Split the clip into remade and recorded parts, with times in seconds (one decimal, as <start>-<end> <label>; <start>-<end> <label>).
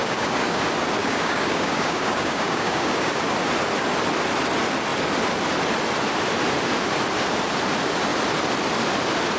0.0-0.6 remade; 0.6-1.0 recorded; 1.0-3.1 remade; 3.1-9.4 recorded